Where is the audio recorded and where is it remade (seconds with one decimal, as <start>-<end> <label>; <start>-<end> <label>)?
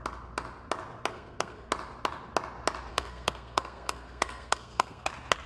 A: 0.0-1.1 recorded; 1.1-1.7 remade; 1.7-2.9 recorded; 2.9-5.1 remade; 5.1-5.5 recorded